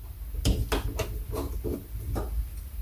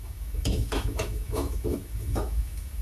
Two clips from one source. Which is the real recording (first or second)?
first